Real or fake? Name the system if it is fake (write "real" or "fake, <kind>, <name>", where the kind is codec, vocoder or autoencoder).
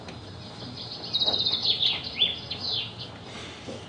real